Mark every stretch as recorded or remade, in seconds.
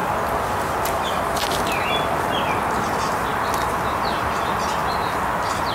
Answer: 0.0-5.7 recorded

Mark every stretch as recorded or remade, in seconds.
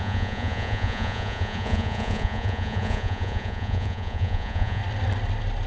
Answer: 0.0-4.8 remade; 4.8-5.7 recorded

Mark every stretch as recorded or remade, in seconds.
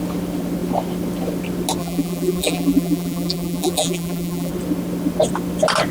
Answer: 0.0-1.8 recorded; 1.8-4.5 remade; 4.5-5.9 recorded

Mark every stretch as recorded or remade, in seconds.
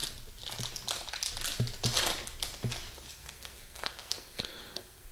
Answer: 0.0-3.1 recorded; 3.1-5.1 remade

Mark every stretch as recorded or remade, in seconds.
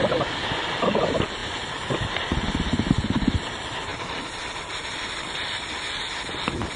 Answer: 0.0-6.8 recorded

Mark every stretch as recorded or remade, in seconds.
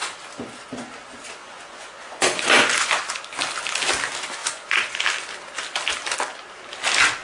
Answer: 0.0-1.4 recorded; 1.4-3.1 remade; 3.1-4.4 recorded; 4.4-5.0 remade; 5.0-7.2 recorded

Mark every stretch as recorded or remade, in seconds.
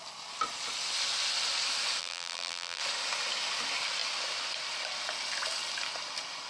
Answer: 0.0-2.0 recorded; 2.0-2.8 remade; 2.8-6.5 recorded